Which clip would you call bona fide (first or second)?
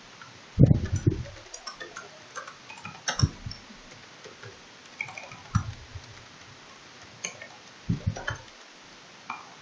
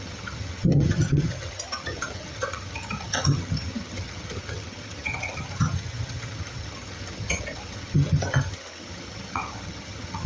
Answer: first